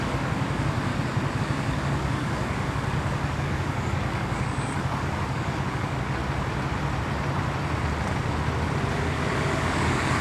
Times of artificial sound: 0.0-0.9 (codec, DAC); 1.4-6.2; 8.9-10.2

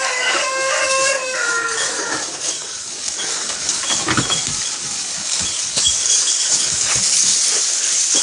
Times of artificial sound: 0.0-7.3 (codec, DAC)

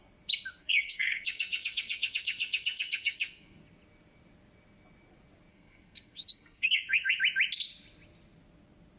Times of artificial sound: 0.6-3.6 (codec, SNAC); 5.5-7.2

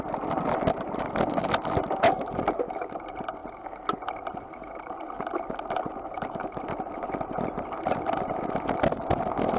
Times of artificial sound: none

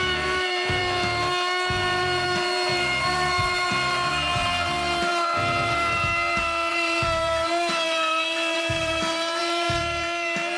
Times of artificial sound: 0.0-0.8 (vocoder, BigVGAN v2); 1.8-5.1; 6.7-10.6

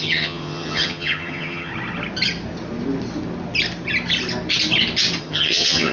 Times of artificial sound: 0.0-1.7 (vocoder, HiFi-GAN); 5.2-5.9

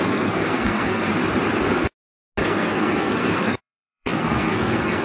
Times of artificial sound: 0.0-1.1 (codec, SNAC); 2.4-5.0

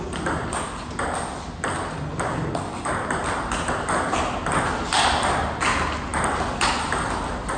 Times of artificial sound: none